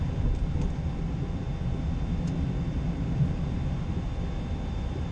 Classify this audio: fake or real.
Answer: real